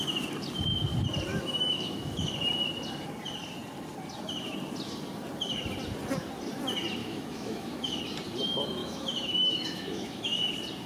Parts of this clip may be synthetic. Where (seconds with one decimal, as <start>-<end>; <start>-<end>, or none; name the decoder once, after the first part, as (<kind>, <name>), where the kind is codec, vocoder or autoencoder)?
1.3-2.3 (autoencoder, DAC-VAE); 7.0-8.0; 8.8-10.5